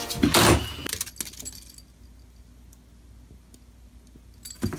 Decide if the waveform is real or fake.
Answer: real